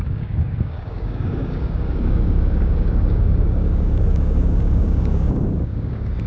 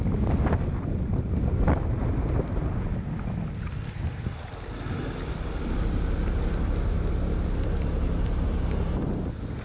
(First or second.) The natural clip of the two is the second